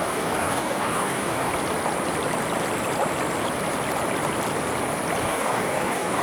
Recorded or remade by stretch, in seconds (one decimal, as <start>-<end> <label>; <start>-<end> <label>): 0.0-1.5 remade; 1.5-5.2 recorded; 5.2-6.2 remade